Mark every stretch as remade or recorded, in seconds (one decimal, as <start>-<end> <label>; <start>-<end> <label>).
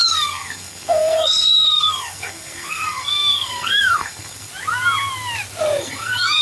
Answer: 0.0-4.5 remade; 4.5-5.8 recorded; 5.8-6.4 remade